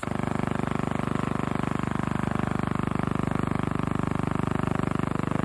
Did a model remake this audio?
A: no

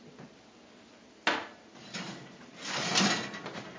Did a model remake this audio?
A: no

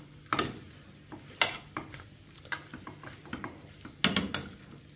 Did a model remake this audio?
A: no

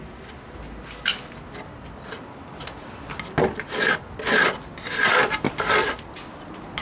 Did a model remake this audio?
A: no